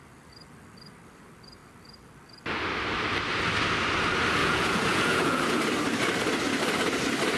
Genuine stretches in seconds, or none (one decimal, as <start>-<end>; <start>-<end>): 0.0-4.4; 5.6-7.4